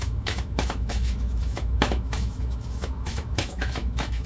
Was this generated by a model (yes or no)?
yes